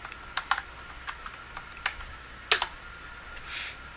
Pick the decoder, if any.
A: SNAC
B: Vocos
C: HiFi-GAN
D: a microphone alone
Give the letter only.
D